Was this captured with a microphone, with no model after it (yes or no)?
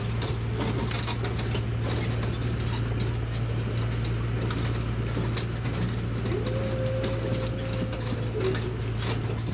yes